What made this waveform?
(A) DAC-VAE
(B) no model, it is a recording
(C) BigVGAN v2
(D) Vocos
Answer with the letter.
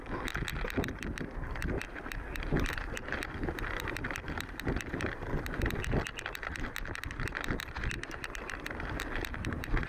B